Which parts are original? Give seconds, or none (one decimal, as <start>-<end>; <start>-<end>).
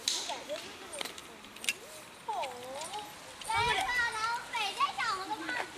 0.0-5.8